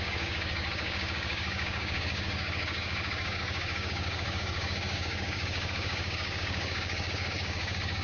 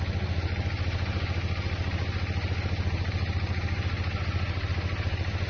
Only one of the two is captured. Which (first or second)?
second